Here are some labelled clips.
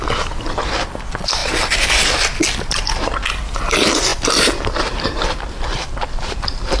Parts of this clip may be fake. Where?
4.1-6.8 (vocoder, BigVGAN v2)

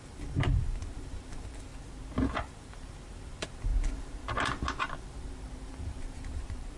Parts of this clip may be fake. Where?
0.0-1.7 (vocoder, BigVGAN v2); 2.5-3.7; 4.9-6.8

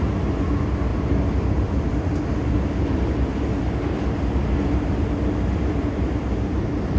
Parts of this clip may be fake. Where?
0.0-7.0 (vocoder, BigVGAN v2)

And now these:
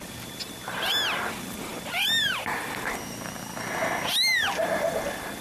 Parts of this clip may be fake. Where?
none